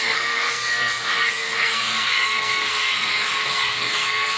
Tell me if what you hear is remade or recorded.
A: remade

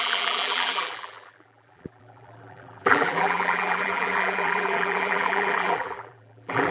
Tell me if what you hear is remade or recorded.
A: remade